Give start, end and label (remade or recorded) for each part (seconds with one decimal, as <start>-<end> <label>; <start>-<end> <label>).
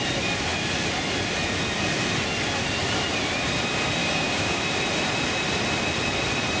0.0-4.0 recorded; 4.0-4.6 remade; 4.6-6.6 recorded